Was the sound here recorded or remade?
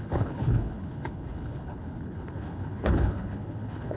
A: remade